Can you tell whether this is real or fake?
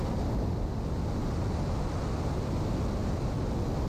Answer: real